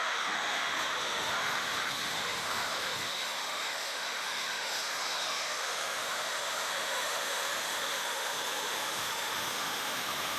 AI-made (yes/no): yes